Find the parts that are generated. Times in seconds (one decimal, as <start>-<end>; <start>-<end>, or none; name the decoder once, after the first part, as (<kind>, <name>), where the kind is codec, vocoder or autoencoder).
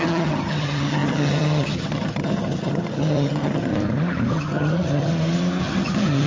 0.0-3.7 (vocoder, HiFi-GAN); 4.3-5.1; 5.6-6.3